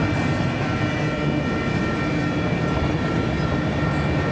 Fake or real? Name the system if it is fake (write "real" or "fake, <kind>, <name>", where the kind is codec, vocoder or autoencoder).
real